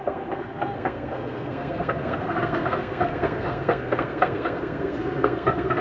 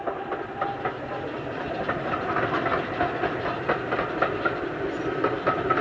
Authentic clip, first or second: second